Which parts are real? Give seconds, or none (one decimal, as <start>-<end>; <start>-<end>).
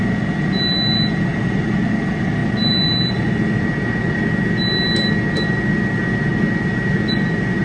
0.0-7.6